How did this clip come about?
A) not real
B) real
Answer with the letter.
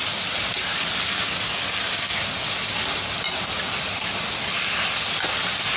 B